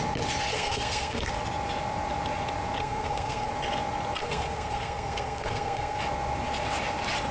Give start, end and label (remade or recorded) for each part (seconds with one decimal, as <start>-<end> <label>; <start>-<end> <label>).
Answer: 0.0-0.5 recorded; 0.5-1.3 remade; 1.3-2.8 recorded; 2.8-3.5 remade; 3.5-4.2 recorded; 4.2-6.0 remade; 6.0-7.3 recorded